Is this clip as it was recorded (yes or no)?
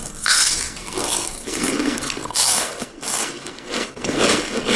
no